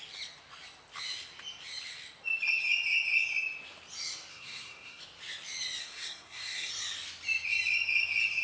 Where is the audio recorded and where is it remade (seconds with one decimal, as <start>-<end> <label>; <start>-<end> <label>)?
0.0-4.3 recorded; 4.3-5.0 remade; 5.0-5.8 recorded; 5.8-6.7 remade; 6.7-8.4 recorded